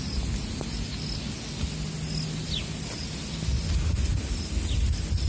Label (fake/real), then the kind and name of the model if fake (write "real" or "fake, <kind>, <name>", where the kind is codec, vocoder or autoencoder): real